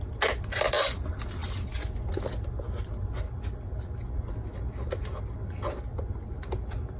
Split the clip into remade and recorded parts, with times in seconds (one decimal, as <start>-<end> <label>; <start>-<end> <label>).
0.0-7.0 recorded